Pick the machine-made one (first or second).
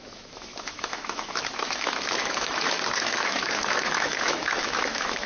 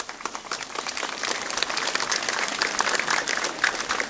first